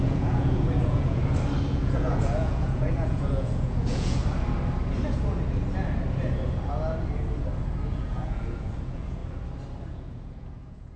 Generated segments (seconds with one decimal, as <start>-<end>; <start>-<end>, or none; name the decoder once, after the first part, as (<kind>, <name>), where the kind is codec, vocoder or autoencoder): 0.0-1.2 (vocoder, Vocos); 1.7-4.2; 7.9-9.2; 9.9-11.0